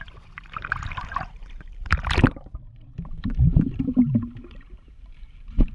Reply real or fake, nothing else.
fake